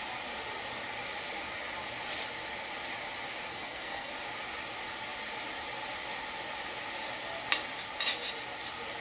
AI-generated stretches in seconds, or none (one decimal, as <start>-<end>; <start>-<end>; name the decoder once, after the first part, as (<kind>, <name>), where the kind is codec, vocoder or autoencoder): 3.5-4.1 (codec, SNAC)